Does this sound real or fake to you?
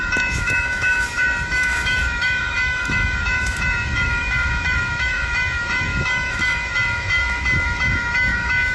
fake